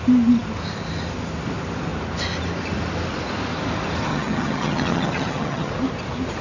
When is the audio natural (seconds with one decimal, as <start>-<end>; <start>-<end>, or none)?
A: 0.0-4.1; 5.7-6.4